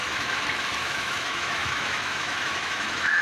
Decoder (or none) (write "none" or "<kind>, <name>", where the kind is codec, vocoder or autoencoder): autoencoder, DAC-VAE